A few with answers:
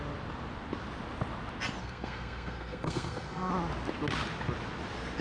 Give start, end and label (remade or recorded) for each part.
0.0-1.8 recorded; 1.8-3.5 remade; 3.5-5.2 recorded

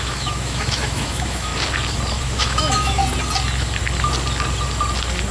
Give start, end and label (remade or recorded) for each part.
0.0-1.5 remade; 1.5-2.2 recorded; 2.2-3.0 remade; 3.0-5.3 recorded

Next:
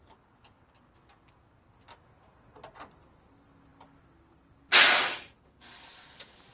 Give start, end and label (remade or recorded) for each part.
0.0-6.5 recorded

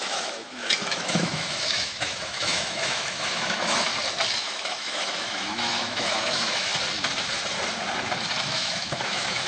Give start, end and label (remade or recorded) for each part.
0.0-3.9 remade; 3.9-4.4 recorded; 4.4-6.7 remade; 6.7-8.4 recorded; 8.4-9.5 remade

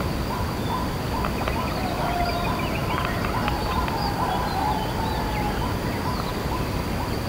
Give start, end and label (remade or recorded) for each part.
0.0-7.3 recorded

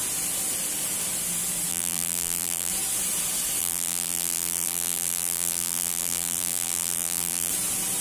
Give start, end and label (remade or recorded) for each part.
0.0-1.7 recorded; 1.7-2.7 remade; 2.7-3.6 recorded; 3.6-7.5 remade; 7.5-8.0 recorded